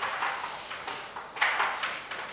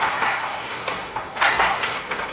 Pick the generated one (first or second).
second